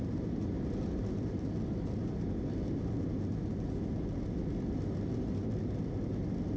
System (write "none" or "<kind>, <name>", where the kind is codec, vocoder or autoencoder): none